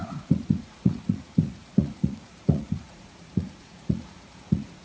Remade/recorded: remade